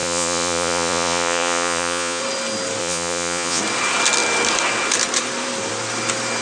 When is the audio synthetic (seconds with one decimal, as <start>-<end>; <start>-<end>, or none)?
0.0-2.2; 2.8-3.6